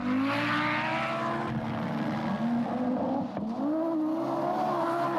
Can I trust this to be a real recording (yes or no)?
yes